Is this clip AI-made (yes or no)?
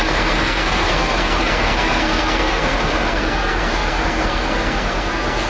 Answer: yes